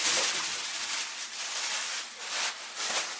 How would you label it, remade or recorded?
recorded